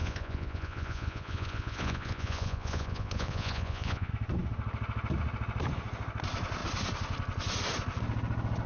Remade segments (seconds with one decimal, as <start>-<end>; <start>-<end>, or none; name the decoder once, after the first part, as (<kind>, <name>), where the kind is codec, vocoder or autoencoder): 0.0-4.1 (vocoder, Vocos)